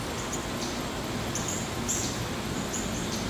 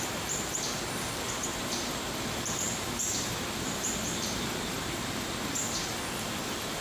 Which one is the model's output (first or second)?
second